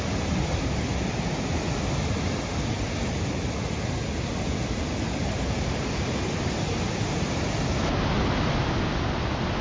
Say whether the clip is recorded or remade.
recorded